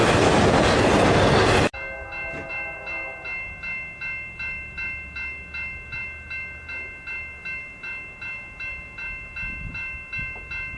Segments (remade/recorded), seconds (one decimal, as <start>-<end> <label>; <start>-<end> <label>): 0.0-10.8 recorded